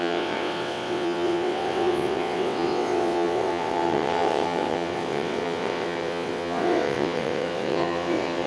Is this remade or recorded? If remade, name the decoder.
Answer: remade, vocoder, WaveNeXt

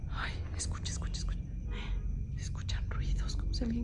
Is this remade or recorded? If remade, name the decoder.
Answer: recorded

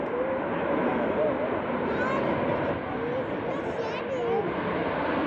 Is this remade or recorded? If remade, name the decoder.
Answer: recorded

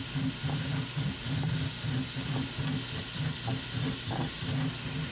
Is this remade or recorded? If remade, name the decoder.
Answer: recorded